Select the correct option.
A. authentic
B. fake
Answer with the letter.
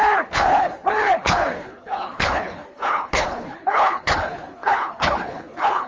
B